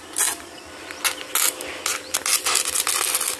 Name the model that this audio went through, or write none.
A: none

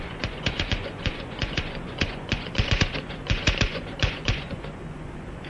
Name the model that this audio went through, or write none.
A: vocoder, Vocos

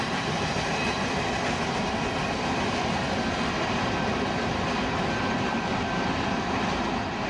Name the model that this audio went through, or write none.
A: none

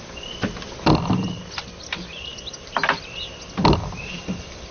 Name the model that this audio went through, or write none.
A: none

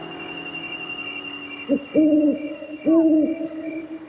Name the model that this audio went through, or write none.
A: none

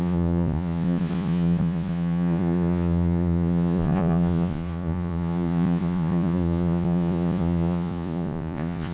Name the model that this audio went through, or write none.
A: vocoder, Vocos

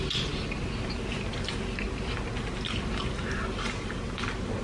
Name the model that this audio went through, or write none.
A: none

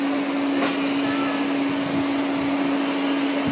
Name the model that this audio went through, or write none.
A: none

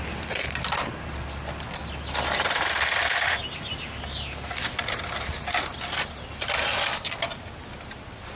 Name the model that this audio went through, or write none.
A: none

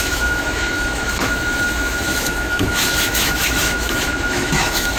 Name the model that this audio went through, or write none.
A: autoencoder, DAC-VAE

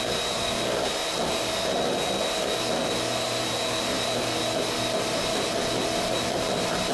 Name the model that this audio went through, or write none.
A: none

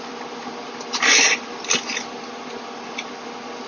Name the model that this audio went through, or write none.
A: none